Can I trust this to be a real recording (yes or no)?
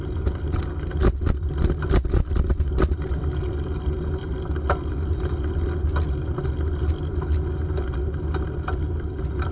yes